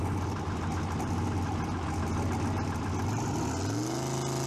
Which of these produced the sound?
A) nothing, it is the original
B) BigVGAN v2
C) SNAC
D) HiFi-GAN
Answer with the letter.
A